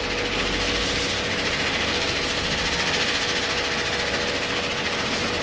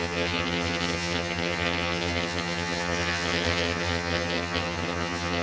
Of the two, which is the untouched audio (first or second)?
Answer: first